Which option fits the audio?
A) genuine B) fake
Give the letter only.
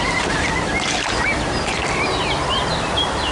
A